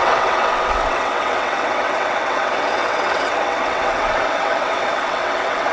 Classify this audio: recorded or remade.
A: remade